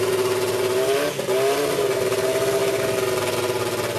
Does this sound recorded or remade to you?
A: recorded